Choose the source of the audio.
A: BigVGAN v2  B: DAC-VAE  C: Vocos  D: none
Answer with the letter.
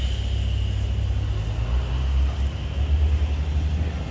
D